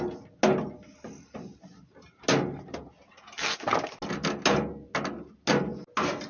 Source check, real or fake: real